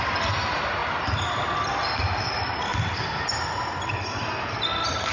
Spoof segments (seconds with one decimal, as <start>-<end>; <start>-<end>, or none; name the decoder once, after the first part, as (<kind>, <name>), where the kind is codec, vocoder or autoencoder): 0.0-0.8 (vocoder, BigVGAN v2); 2.2-2.7; 4.5-5.1